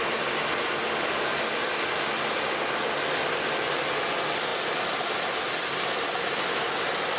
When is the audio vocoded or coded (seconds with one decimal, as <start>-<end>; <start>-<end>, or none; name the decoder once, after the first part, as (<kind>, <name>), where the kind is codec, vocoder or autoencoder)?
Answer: 4.5-5.1 (vocoder, BigVGAN v2)